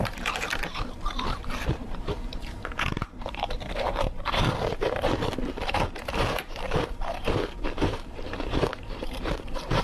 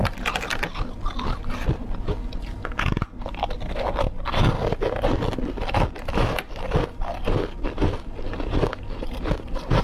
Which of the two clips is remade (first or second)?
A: first